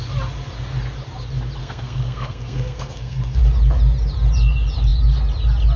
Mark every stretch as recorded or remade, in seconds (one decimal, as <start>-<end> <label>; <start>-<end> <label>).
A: 0.0-1.6 recorded; 1.6-3.4 remade; 3.4-5.8 recorded